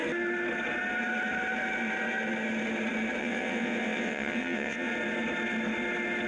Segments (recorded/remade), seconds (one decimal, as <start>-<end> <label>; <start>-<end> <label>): 0.0-3.2 recorded; 3.2-4.9 remade; 4.9-6.3 recorded